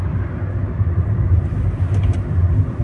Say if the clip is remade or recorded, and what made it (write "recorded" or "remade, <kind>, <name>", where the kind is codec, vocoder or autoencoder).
remade, vocoder, BigVGAN v2